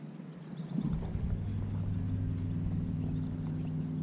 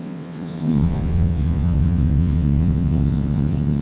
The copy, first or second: second